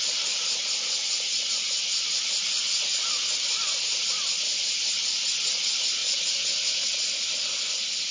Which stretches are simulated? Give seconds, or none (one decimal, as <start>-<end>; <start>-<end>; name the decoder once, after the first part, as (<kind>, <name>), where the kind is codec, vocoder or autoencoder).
none

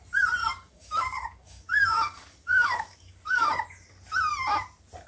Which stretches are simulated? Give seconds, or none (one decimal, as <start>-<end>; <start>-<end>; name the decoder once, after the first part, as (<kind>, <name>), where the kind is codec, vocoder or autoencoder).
0.4-3.5 (codec, DAC)